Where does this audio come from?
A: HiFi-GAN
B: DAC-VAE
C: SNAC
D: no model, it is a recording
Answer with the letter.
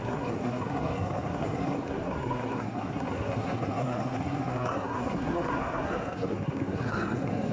C